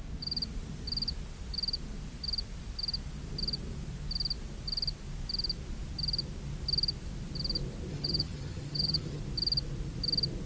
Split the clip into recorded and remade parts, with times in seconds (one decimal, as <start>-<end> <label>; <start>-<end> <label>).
0.0-7.9 recorded; 7.9-9.2 remade; 9.2-10.5 recorded